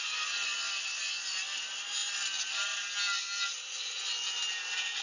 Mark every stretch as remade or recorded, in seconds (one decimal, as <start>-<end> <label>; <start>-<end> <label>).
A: 0.0-5.0 recorded